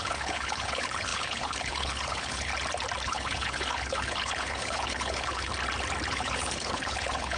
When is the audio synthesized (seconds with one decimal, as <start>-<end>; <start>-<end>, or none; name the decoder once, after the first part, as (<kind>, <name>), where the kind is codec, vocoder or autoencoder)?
0.0-2.5 (codec, HILCodec); 3.0-5.5; 6.1-7.4